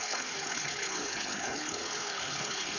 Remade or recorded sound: remade